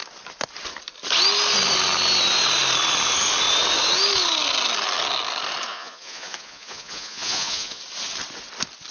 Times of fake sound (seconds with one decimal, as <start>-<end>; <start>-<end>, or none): 5.7-7.8